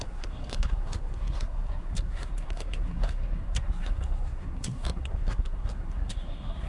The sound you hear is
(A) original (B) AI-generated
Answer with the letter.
B